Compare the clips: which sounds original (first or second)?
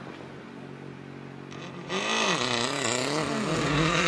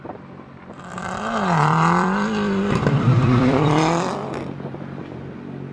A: first